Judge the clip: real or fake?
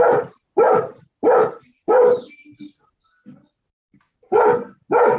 real